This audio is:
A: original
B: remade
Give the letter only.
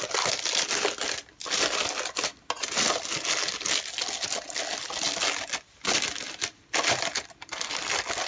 A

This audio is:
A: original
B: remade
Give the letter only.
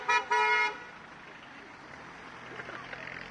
A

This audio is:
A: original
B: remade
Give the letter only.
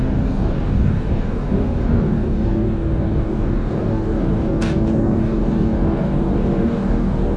B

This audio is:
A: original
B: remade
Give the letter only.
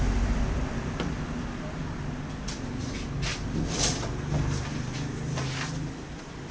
A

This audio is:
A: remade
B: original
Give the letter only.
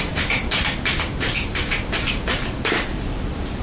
A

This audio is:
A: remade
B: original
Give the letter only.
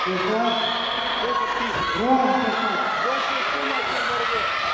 B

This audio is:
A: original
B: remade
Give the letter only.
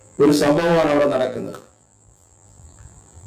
B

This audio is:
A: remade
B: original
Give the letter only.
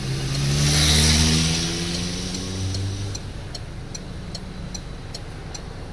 B